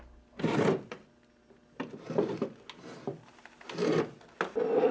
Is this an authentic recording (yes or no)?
yes